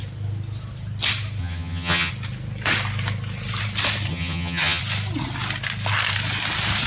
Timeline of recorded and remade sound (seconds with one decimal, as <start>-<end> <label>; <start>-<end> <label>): 0.0-1.4 recorded; 1.4-2.1 remade; 2.1-4.1 recorded; 4.1-4.8 remade; 4.8-6.9 recorded